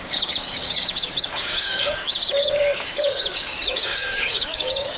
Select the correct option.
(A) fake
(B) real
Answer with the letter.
A